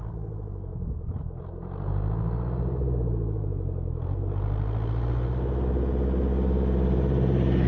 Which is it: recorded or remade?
recorded